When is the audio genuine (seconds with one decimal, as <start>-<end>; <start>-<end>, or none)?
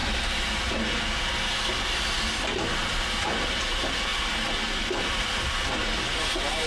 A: 0.0-6.7